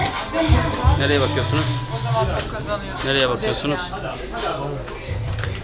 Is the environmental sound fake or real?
real